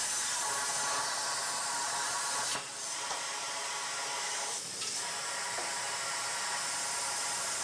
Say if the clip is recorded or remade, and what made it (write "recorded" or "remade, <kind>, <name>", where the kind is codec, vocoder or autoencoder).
recorded